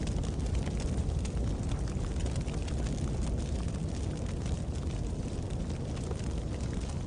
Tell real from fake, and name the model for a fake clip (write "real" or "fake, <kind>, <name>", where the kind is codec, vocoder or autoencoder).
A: real